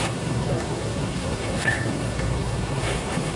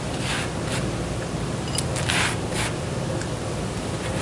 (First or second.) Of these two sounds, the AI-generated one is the first